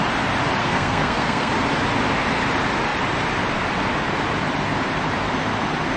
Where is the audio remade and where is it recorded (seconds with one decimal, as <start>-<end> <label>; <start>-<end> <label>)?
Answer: 0.0-0.6 recorded; 0.6-1.5 remade; 1.5-6.0 recorded